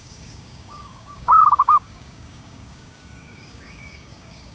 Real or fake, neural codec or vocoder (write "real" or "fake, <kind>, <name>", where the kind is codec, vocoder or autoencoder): fake, codec, DAC